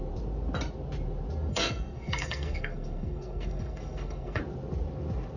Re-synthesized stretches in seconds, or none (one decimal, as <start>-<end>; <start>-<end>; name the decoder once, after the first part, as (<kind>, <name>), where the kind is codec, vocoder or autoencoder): 1.5-4.4 (codec, SNAC)